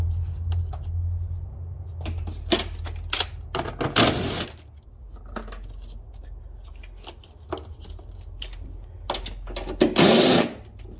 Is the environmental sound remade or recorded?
recorded